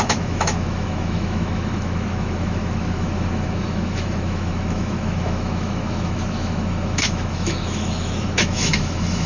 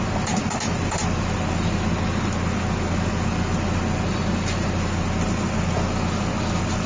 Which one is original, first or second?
second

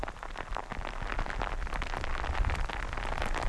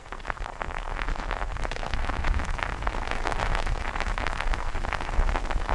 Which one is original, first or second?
first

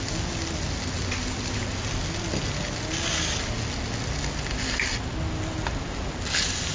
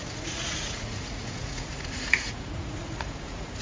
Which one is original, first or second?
first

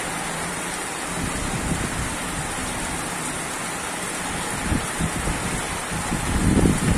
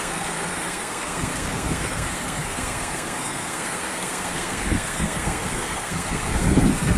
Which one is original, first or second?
first